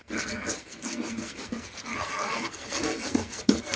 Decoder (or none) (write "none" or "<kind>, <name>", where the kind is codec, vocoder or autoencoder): codec, SNAC